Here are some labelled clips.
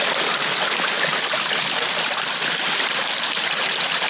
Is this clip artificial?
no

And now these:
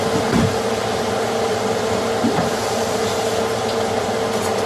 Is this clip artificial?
no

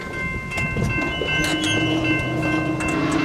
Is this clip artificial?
no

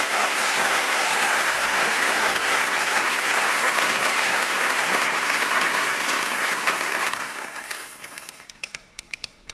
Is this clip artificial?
yes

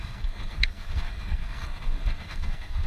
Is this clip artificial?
yes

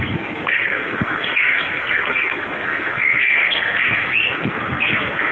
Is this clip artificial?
yes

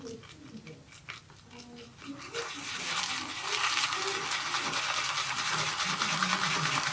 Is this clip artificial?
no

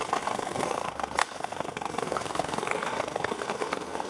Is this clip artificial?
yes